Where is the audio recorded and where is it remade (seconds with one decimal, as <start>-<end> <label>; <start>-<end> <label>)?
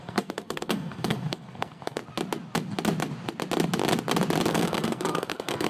0.0-2.0 remade; 2.0-4.5 recorded; 4.5-5.7 remade